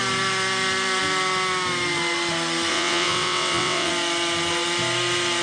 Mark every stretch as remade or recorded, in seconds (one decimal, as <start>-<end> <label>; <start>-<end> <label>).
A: 0.0-2.7 recorded; 2.7-3.9 remade; 3.9-5.4 recorded